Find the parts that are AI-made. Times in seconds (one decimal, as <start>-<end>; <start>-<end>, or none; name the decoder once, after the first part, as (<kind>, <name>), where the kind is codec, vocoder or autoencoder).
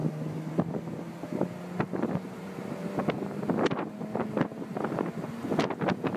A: none